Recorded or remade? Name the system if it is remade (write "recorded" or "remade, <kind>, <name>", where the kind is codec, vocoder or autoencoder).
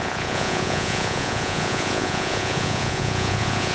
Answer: remade, vocoder, Vocos